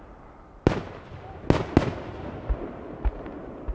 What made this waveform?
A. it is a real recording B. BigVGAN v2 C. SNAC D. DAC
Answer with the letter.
A